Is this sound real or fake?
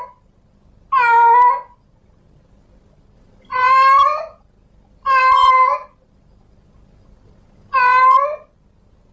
real